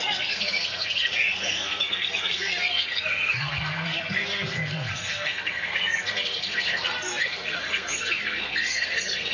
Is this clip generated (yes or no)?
yes